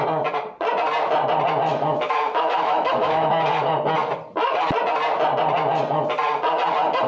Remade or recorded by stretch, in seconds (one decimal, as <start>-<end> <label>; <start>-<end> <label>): 0.0-1.7 recorded; 1.7-3.3 remade; 3.3-7.1 recorded